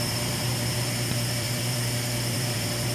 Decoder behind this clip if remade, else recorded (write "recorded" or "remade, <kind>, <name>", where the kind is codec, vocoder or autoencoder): remade, vocoder, BigVGAN v2